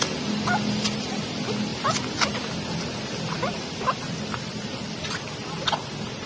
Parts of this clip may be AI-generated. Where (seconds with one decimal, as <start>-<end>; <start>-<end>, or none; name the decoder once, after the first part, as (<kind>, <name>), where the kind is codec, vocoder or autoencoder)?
none